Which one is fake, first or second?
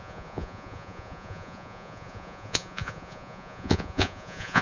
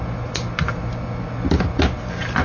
first